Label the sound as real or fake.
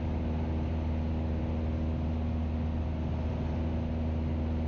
real